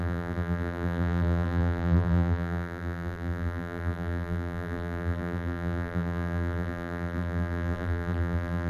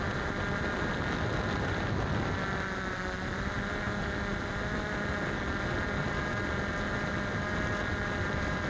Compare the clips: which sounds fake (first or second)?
first